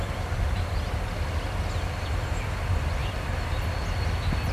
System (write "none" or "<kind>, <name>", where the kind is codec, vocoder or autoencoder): none